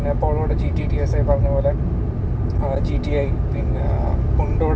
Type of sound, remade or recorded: recorded